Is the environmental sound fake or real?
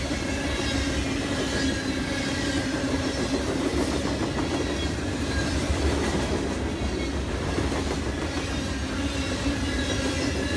real